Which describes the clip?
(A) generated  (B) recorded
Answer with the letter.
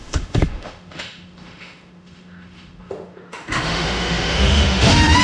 A